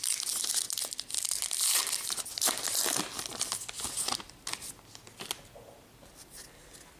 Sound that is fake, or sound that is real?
real